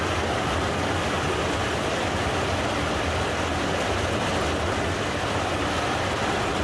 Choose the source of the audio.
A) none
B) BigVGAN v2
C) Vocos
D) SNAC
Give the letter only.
A